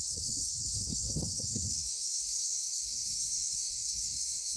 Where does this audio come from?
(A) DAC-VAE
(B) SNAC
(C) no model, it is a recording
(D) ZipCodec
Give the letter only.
B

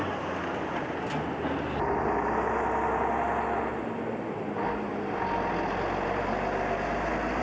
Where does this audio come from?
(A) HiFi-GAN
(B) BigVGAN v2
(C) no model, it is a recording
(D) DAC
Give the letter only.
C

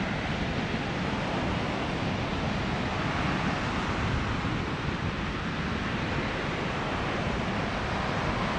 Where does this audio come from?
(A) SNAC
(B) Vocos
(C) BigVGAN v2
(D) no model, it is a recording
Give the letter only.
D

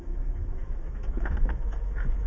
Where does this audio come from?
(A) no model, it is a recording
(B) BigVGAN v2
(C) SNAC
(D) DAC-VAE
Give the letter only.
D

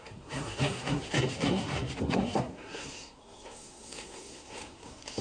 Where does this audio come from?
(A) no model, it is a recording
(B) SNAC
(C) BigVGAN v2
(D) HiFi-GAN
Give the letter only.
B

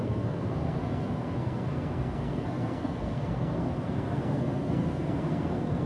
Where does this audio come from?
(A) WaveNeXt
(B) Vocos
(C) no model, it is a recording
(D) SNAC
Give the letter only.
D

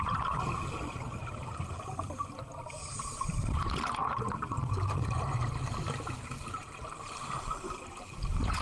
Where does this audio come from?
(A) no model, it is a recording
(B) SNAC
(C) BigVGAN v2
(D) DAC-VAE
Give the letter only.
C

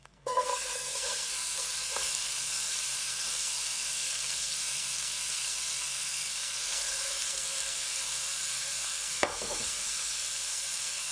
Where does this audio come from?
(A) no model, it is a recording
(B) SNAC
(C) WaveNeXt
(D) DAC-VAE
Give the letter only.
B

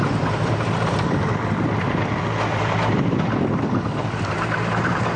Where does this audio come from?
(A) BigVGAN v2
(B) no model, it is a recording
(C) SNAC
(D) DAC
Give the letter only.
A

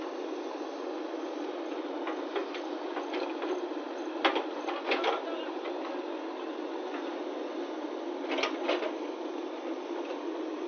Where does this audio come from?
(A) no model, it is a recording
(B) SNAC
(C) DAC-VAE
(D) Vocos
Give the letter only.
A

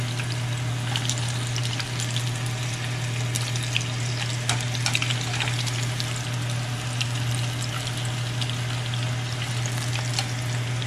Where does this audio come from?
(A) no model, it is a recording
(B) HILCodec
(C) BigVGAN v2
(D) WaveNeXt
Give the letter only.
A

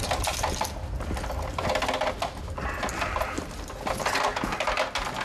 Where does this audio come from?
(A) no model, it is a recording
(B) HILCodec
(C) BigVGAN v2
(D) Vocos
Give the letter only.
A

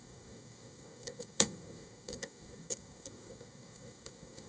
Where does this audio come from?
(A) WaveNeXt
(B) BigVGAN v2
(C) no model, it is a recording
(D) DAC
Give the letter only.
D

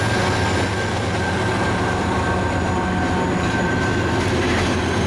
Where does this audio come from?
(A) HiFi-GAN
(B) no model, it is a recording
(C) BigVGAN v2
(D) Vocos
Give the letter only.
B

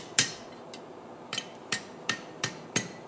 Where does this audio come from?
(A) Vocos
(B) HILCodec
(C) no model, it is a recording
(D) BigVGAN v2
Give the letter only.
D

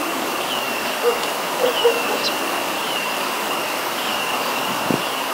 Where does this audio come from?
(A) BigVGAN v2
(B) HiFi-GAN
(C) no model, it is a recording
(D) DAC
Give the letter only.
D